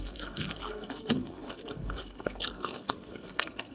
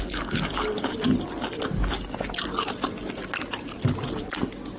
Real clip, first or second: second